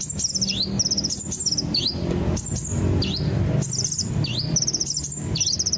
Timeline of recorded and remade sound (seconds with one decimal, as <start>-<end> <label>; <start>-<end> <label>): 0.0-5.8 recorded